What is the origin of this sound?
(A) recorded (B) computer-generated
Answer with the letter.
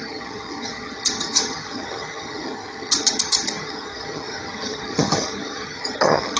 B